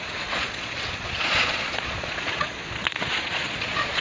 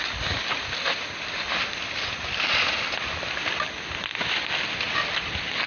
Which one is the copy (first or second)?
first